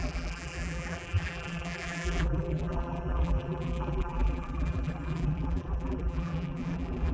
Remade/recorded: remade